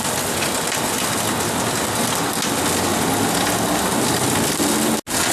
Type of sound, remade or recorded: recorded